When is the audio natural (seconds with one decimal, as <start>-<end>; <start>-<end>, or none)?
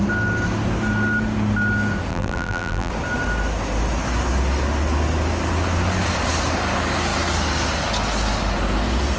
0.0-2.1; 2.9-9.2